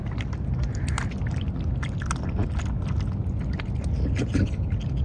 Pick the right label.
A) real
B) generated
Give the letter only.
A